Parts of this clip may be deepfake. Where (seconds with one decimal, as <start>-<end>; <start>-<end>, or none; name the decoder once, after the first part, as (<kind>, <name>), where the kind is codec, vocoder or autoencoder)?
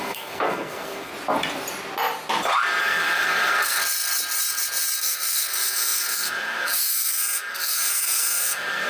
0.0-1.1 (codec, SNAC); 2.8-3.8; 5.0-8.9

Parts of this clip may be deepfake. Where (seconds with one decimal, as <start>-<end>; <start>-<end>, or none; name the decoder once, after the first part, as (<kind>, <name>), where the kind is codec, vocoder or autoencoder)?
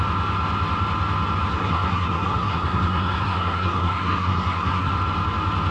1.5-4.9 (codec, SNAC)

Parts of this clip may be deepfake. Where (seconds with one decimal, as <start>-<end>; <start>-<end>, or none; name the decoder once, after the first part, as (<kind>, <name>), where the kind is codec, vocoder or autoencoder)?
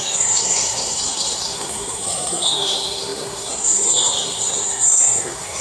0.0-5.6 (codec, SNAC)